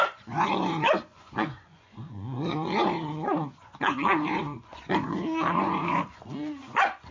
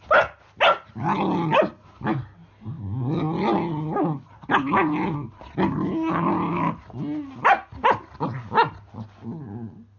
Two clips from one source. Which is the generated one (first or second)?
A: first